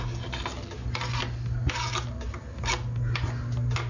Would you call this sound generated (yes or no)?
no